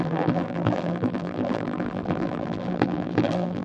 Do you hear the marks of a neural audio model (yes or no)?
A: yes